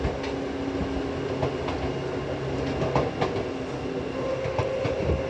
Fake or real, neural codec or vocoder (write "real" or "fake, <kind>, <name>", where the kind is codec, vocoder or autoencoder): real